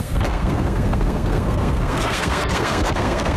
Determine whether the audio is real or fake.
fake